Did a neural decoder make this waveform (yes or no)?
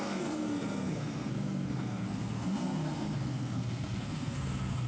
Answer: yes